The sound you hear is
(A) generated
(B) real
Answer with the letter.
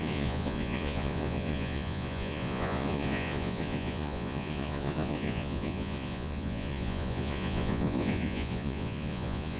A